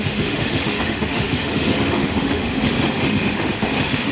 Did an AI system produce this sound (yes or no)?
yes